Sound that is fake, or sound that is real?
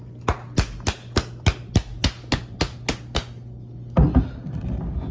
real